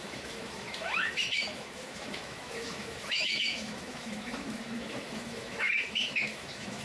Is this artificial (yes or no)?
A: yes